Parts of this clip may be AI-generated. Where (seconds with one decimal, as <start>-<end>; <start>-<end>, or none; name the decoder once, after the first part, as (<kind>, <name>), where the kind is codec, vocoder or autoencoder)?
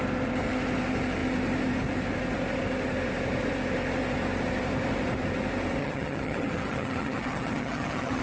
5.8-8.2 (vocoder, HiFi-GAN)